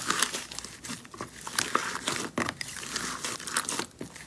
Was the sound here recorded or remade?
recorded